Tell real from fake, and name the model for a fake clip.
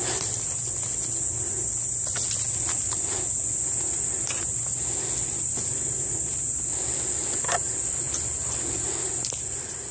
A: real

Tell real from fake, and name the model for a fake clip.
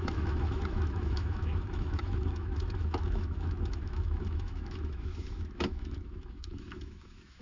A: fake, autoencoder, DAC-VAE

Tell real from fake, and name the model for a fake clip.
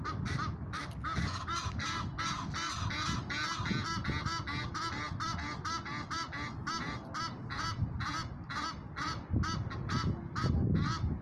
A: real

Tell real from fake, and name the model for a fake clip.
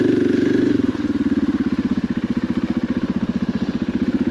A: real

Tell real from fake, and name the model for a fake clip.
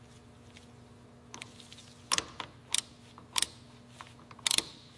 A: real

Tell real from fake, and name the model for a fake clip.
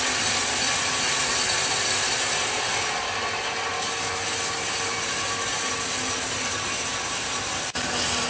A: real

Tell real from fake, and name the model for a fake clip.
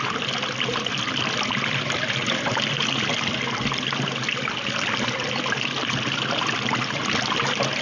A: real